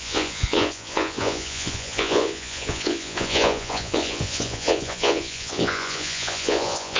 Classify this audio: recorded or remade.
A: remade